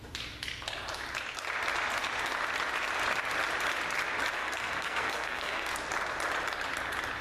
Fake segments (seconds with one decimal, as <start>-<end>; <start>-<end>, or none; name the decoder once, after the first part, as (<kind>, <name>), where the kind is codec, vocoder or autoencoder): 4.4-5.7 (codec, SNAC)